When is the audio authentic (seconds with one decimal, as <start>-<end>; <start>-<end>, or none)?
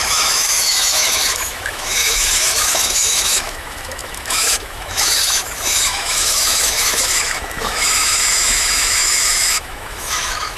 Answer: none